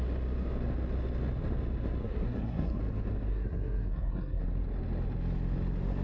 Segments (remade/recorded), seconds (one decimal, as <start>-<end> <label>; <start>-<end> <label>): 0.0-2.0 recorded; 2.0-2.8 remade; 2.8-3.3 recorded; 3.3-4.4 remade; 4.4-6.0 recorded